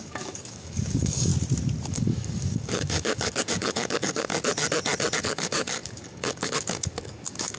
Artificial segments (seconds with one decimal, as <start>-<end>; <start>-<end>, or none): 0.0-1.3; 1.9-4.3; 5.2-7.6